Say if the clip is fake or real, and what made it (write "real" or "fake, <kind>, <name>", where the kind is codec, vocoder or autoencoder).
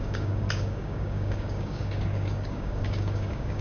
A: fake, codec, DAC